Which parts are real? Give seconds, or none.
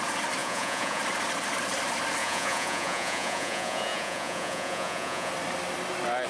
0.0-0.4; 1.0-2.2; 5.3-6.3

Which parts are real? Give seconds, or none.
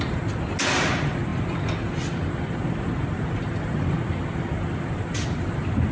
0.0-5.9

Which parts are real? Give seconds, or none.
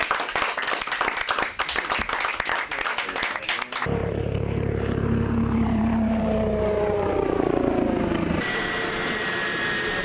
0.0-4.0; 8.6-10.0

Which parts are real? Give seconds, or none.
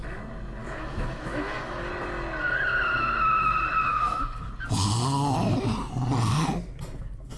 0.0-0.6; 1.9-3.9; 4.5-7.4